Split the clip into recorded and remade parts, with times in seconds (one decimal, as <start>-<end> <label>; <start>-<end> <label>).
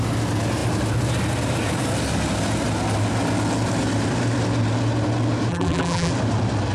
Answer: 0.0-5.5 recorded; 5.5-6.1 remade; 6.1-6.7 recorded